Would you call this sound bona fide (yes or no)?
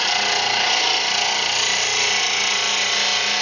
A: yes